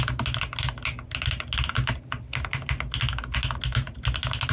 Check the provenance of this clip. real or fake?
real